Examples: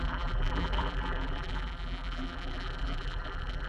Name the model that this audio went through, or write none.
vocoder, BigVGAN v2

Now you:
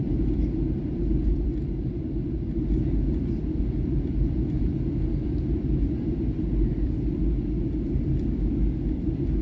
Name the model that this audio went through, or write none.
vocoder, BigVGAN v2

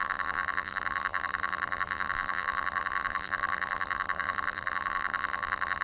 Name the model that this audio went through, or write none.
vocoder, BigVGAN v2